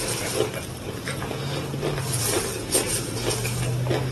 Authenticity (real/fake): real